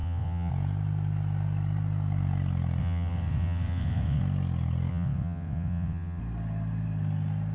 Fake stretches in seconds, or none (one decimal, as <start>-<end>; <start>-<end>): 0.0-0.5; 2.8-4.2; 4.9-6.2